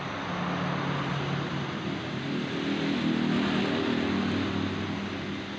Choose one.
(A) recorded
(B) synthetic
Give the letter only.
A